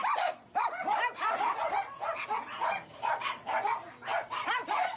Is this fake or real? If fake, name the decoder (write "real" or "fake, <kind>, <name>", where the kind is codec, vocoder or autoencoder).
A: real